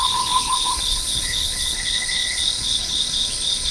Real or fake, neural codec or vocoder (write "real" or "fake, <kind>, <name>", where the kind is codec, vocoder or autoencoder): fake, codec, HILCodec